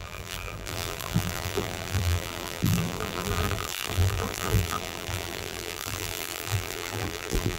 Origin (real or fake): fake